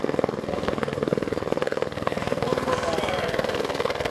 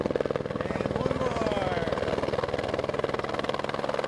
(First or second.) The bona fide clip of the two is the second